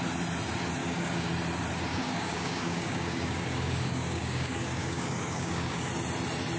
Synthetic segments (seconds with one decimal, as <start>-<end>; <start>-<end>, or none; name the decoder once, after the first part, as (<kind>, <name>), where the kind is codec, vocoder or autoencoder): 0.8-1.3 (codec, DAC); 1.9-5.9